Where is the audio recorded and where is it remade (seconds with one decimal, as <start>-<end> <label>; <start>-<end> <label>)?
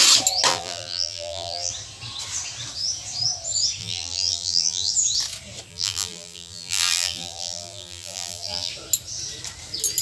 0.0-0.5 recorded; 0.5-1.7 remade; 1.7-3.8 recorded; 3.8-4.9 remade; 4.9-5.7 recorded; 5.7-8.7 remade; 8.7-10.0 recorded